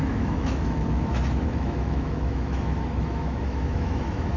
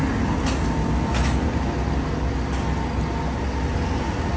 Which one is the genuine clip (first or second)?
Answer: second